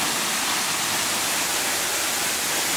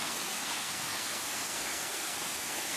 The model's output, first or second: second